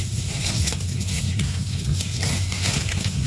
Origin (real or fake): fake